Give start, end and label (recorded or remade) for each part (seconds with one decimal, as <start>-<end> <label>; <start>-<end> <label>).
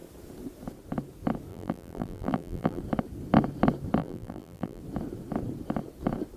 0.0-1.5 recorded; 1.5-2.8 remade; 2.8-4.0 recorded; 4.0-4.8 remade; 4.8-6.4 recorded